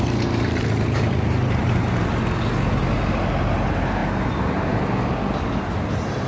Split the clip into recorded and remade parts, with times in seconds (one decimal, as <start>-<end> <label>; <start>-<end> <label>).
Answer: 0.0-6.3 recorded